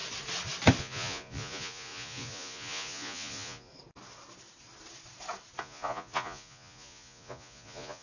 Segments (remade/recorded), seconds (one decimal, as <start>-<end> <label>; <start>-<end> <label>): 0.0-0.8 recorded; 0.8-3.7 remade; 3.7-5.6 recorded; 5.6-8.0 remade